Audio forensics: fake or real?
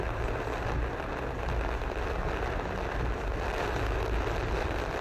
real